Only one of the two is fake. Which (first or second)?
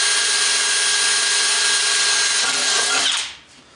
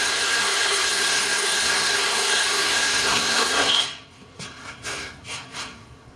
second